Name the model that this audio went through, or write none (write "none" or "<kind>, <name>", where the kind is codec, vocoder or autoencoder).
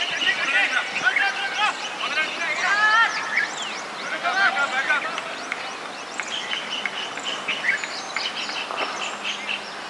none